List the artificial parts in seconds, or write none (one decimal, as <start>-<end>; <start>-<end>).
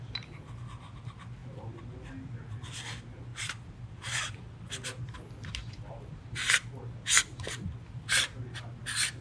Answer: 3.3-4.4